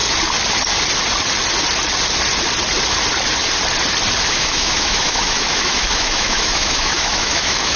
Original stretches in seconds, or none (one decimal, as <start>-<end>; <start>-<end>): 0.0-4.3